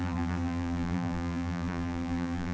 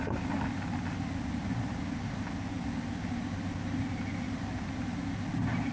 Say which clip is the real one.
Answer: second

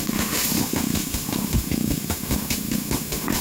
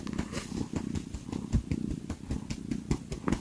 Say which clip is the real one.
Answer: second